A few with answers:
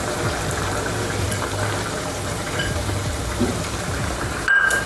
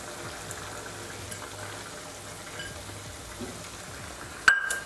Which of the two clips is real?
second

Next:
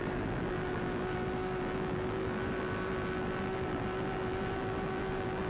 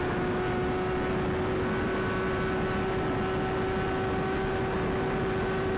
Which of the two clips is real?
second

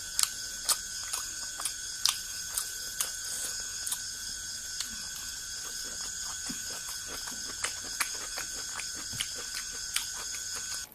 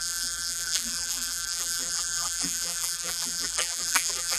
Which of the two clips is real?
first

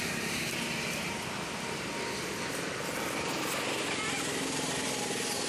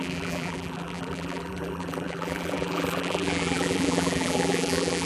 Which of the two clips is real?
first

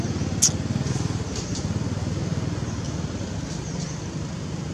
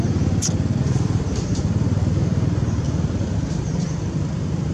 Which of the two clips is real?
first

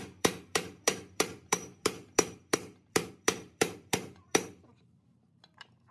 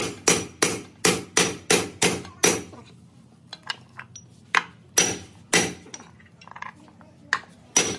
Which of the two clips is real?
second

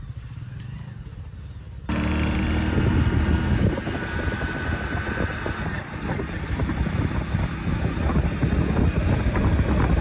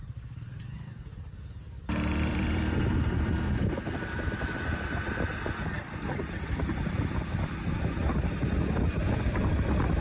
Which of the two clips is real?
first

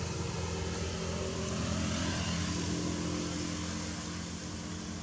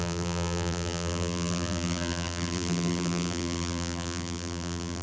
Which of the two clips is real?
first